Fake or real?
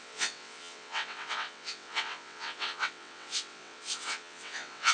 fake